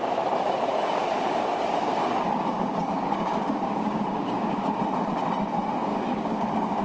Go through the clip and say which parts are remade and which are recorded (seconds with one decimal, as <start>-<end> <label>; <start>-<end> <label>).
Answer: 0.0-0.7 recorded; 0.7-4.8 remade; 4.8-5.9 recorded; 5.9-6.8 remade

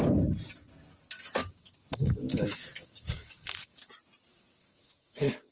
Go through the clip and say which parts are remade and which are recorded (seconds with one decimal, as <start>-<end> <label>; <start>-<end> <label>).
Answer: 0.0-1.4 recorded; 1.4-3.9 remade; 3.9-4.3 recorded; 4.3-5.5 remade

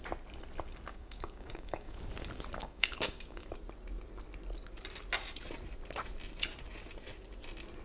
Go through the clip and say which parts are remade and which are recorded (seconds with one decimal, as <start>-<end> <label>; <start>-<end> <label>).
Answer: 0.0-0.9 recorded; 0.9-2.0 remade; 2.0-2.6 recorded; 2.6-3.5 remade; 3.5-7.8 recorded

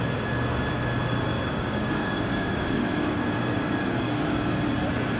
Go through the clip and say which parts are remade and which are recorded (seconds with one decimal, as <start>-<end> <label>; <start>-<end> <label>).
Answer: 0.0-1.3 recorded; 1.3-4.4 remade; 4.4-5.2 recorded

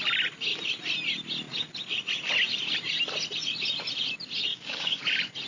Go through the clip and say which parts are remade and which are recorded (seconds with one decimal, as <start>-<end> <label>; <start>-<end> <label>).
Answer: 0.0-4.5 recorded; 4.5-5.0 remade; 5.0-5.5 recorded

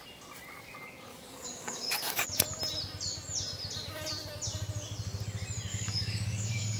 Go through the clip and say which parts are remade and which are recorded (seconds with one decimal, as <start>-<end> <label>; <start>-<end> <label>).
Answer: 0.0-1.1 recorded; 1.1-2.1 remade; 2.1-5.7 recorded; 5.7-6.8 remade

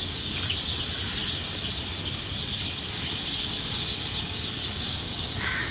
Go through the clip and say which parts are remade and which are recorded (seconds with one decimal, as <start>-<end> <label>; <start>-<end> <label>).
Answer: 0.0-0.5 remade; 0.5-4.6 recorded; 4.6-5.7 remade

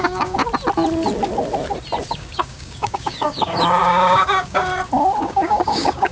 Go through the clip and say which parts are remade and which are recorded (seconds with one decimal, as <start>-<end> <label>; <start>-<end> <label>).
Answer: 0.0-0.4 remade; 0.4-2.1 recorded; 2.1-4.7 remade; 4.7-5.2 recorded; 5.2-6.1 remade